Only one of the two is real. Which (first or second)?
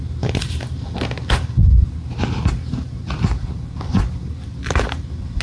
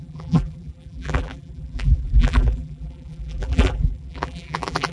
first